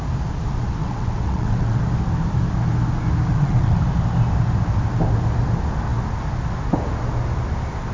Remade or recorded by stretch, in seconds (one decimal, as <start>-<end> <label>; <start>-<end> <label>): 0.0-0.8 recorded; 0.8-1.8 remade; 1.8-3.3 recorded; 3.3-3.8 remade; 3.8-7.9 recorded